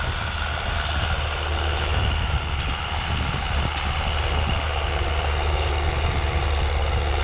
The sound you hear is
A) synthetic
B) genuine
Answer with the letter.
B